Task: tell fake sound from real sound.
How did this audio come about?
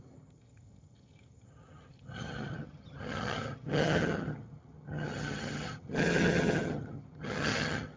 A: fake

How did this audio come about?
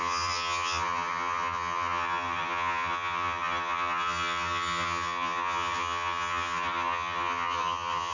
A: fake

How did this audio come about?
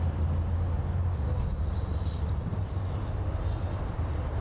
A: real